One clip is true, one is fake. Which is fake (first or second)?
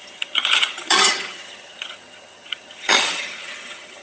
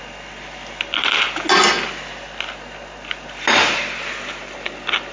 first